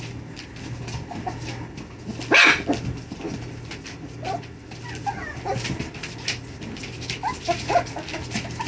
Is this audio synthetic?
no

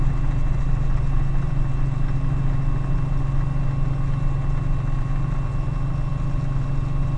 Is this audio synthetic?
no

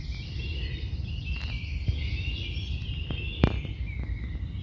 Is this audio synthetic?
no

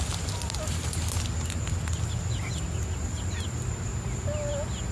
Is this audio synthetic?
no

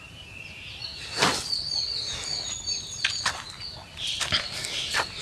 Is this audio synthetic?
no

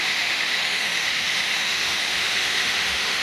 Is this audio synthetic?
yes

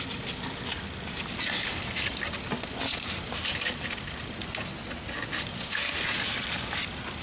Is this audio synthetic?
no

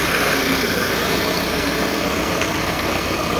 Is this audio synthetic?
yes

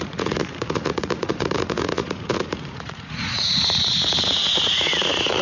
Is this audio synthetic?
yes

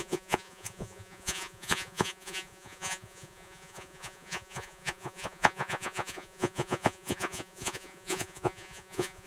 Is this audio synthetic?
yes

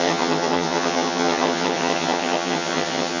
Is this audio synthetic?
yes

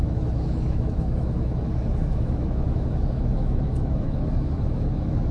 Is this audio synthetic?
yes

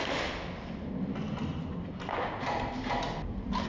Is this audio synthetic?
no